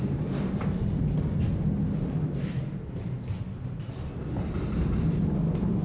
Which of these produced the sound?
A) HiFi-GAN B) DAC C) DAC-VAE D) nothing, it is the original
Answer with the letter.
D